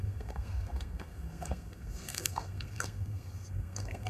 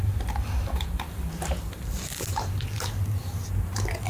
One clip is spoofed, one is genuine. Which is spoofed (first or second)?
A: first